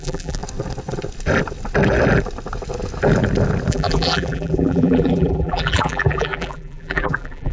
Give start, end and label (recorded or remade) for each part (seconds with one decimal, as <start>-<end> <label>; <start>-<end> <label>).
0.0-0.4 remade; 0.4-3.7 recorded; 3.7-7.5 remade